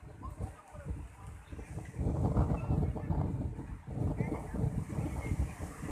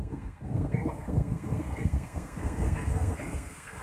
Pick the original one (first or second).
first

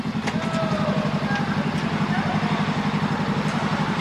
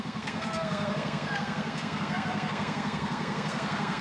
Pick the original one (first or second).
first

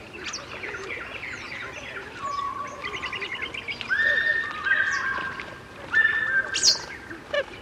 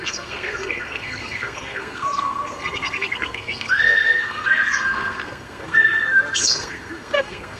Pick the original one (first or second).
first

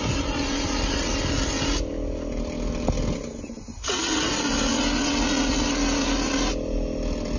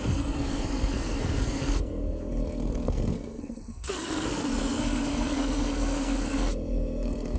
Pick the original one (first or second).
first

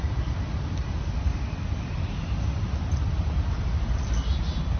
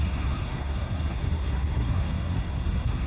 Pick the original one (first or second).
first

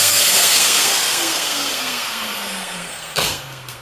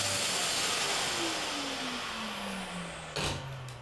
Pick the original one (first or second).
second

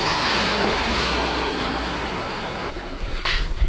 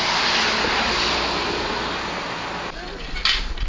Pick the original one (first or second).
second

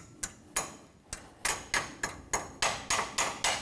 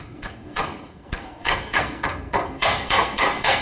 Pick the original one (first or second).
first